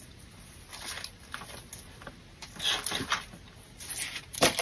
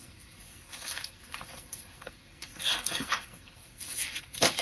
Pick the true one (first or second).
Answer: first